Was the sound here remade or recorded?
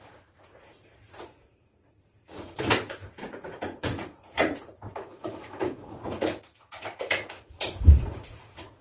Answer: remade